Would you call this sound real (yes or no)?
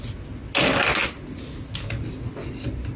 yes